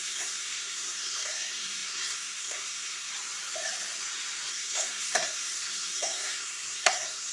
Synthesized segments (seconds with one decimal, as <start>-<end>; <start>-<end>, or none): 0.0-3.1; 4.5-7.3